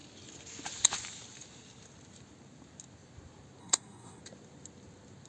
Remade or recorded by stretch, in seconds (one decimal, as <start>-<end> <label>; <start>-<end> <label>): 0.0-3.6 recorded; 3.6-4.2 remade; 4.2-5.3 recorded